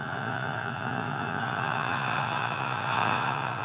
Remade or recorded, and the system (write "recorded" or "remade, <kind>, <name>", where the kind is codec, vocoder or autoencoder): remade, vocoder, Vocos